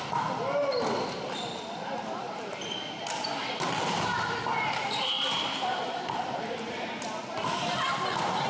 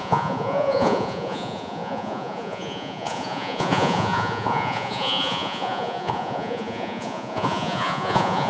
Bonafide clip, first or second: first